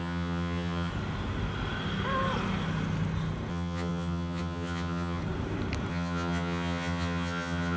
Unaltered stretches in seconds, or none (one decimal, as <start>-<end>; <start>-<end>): 0.9-3.5; 5.2-5.9